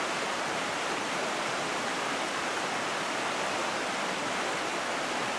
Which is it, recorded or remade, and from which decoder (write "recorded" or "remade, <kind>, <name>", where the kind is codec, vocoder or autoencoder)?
recorded